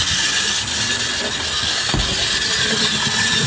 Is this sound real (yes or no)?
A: yes